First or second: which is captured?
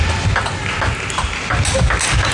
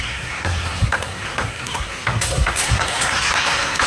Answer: first